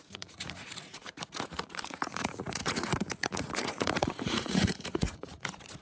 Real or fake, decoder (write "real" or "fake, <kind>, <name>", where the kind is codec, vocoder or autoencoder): fake, vocoder, Vocos